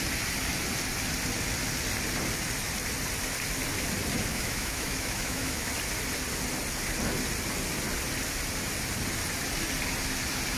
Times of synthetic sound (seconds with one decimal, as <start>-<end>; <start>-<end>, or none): 4.3-5.7